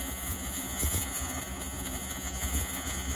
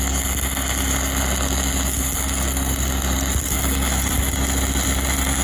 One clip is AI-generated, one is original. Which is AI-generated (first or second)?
first